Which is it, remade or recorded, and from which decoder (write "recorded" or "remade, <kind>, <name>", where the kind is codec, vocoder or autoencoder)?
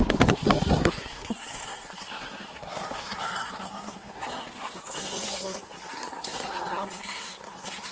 remade, codec, SNAC